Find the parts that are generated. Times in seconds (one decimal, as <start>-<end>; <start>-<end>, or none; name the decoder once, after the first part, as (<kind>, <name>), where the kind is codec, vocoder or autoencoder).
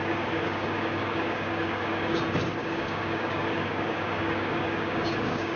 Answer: 0.0-2.2 (codec, DAC); 2.6-5.6